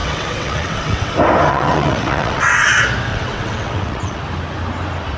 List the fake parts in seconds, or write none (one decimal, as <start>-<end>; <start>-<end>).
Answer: 0.0-1.1; 1.5-2.7; 3.1-4.2